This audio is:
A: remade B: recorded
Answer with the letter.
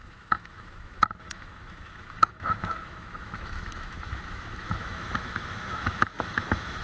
A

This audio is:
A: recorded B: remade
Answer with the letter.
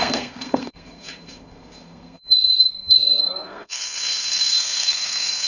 B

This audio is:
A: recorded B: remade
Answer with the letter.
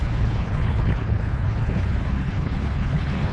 B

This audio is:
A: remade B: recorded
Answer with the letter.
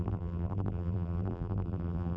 A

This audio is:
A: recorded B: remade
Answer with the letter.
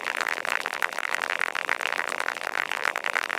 B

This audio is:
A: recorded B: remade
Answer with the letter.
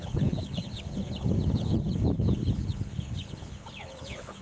B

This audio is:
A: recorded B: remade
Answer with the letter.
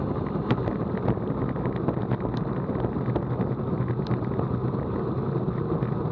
A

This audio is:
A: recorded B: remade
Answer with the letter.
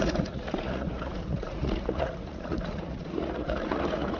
B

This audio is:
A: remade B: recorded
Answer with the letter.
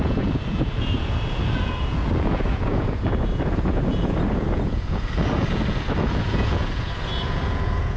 A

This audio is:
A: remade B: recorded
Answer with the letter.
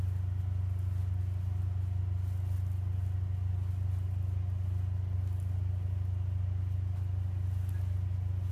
B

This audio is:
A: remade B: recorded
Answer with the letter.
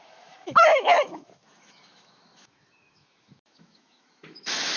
A